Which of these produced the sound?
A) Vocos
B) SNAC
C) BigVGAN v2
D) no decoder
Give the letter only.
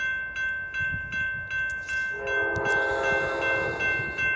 D